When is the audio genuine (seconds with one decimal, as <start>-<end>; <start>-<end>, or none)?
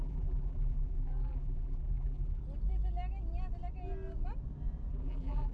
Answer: 2.4-4.9